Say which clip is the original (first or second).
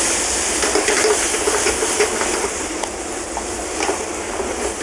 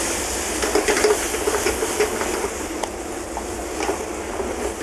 second